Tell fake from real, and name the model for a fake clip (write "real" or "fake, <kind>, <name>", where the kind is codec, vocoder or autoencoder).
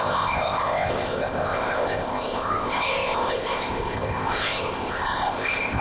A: fake, codec, ZipCodec